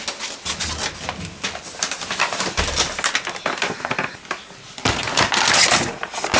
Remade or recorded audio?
recorded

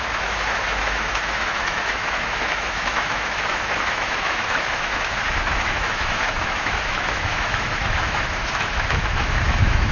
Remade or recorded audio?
remade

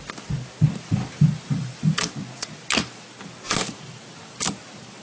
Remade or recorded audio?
recorded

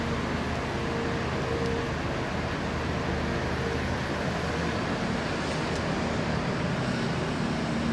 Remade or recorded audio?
recorded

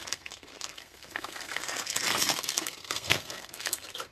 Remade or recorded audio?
remade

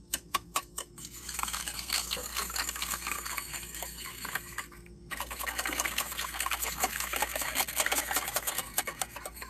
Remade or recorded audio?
remade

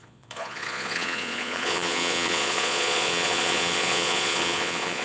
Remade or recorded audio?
remade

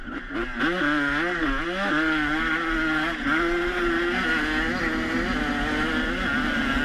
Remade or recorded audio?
recorded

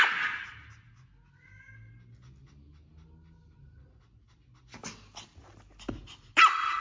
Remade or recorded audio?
recorded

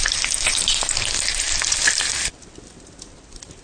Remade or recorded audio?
recorded